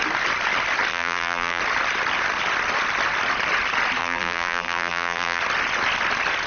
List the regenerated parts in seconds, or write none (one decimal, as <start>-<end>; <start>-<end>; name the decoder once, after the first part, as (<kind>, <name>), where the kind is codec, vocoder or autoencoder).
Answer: 0.9-1.6 (vocoder, BigVGAN v2); 4.0-5.4